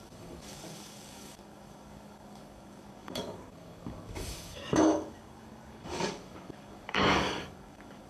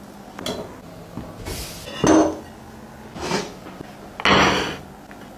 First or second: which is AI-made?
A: first